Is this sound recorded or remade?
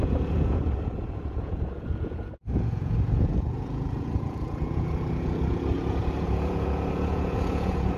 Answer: remade